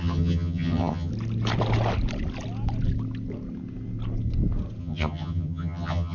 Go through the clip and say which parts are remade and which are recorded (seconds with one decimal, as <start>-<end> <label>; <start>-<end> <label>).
0.0-1.1 remade; 1.1-4.8 recorded; 4.8-6.1 remade